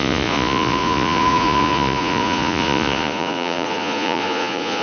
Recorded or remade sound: remade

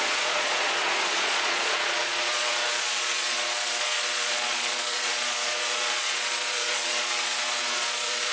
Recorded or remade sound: remade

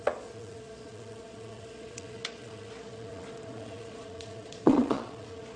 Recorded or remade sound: remade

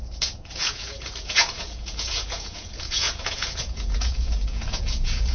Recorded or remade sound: remade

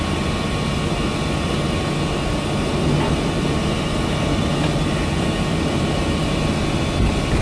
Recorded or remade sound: recorded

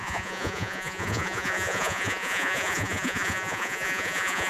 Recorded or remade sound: remade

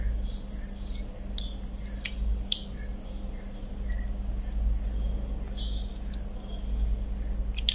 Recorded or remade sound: recorded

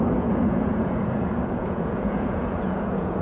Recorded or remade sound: remade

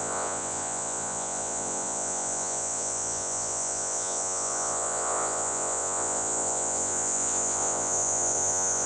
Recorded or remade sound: remade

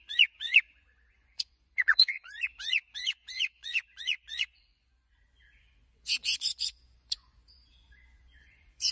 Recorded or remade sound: remade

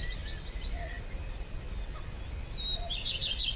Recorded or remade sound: recorded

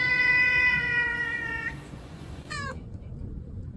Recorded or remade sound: remade